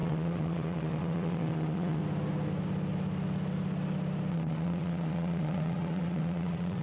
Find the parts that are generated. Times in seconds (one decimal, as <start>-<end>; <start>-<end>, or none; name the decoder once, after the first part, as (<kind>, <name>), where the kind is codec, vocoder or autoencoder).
0.0-2.0 (vocoder, Vocos); 4.3-6.8